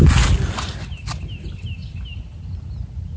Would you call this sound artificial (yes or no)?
no